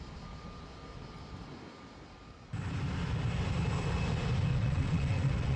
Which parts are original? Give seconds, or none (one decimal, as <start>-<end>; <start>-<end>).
0.0-4.5

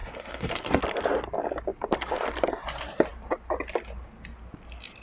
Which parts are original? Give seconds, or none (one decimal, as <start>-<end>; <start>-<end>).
0.8-5.0

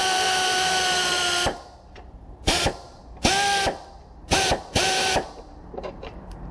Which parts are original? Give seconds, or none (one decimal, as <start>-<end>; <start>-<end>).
3.0-4.0

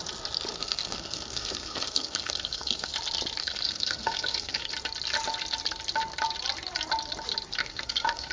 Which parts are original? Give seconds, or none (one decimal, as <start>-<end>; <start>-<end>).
0.0-0.5; 2.9-3.4; 4.7-7.6

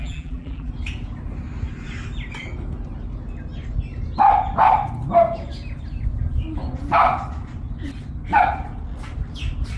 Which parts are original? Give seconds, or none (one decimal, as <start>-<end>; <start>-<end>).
0.7-9.8

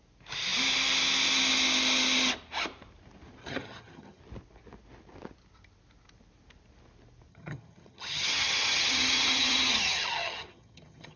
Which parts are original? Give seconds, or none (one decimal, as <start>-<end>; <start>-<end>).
0.0-3.4; 4.2-7.3